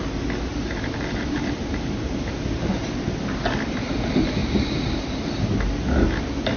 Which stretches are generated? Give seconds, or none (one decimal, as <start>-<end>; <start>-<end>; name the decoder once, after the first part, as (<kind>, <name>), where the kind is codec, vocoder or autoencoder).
0.5-2.8 (vocoder, BigVGAN v2); 4.4-5.3